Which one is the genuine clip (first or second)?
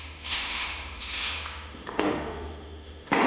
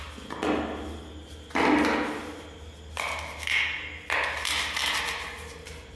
second